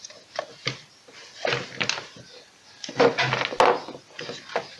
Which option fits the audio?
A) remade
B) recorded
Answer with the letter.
B